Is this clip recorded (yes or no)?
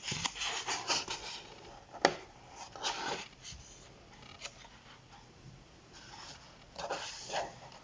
yes